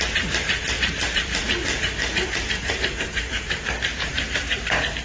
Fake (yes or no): yes